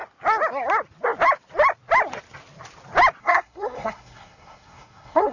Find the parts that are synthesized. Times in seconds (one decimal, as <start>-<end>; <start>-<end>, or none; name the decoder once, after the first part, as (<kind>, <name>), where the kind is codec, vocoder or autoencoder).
3.2-5.3 (codec, SNAC)